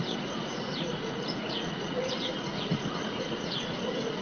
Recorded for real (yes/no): no